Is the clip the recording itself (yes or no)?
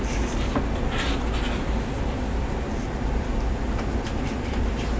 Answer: no